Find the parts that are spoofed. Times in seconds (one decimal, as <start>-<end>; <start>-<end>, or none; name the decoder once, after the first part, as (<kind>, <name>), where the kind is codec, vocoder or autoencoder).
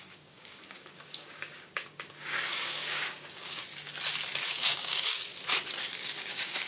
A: 0.0-3.6 (codec, DAC); 4.5-5.3; 5.8-6.7